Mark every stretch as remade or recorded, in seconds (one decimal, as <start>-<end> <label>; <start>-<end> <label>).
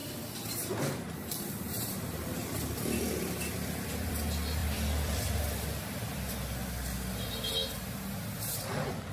0.0-4.1 remade; 4.1-4.6 recorded; 4.6-6.3 remade; 6.3-9.1 recorded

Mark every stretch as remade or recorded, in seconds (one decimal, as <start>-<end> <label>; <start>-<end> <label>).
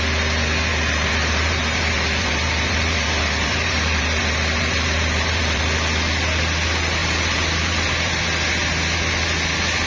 0.0-0.7 recorded; 0.7-5.6 remade; 5.6-7.0 recorded; 7.0-8.1 remade; 8.1-9.9 recorded